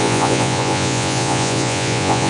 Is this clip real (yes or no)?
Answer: no